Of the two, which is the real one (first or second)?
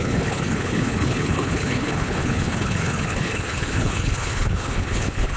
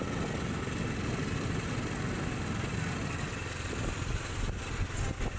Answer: second